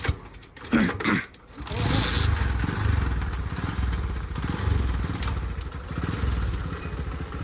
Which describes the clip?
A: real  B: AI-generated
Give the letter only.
A